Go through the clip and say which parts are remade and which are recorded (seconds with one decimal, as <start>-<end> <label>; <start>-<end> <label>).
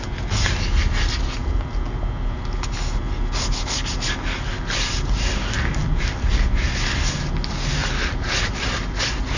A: 0.0-5.8 recorded; 5.8-6.7 remade; 6.7-7.8 recorded; 7.8-8.5 remade; 8.5-9.4 recorded